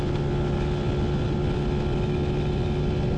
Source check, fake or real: real